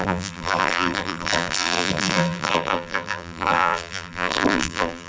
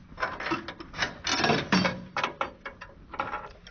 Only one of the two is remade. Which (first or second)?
first